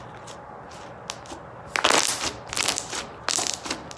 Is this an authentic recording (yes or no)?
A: yes